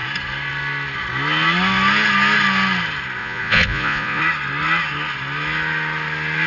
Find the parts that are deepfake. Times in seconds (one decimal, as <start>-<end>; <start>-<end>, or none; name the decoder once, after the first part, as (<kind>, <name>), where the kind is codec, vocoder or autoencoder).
3.2-4.2 (vocoder, Vocos)